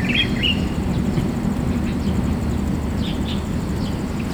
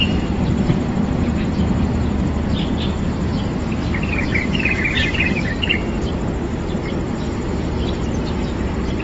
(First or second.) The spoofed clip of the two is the second